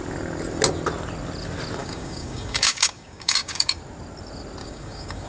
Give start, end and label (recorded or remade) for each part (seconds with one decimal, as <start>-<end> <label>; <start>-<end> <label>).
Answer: 0.0-1.8 recorded; 1.8-3.8 remade; 3.8-4.6 recorded; 4.6-5.3 remade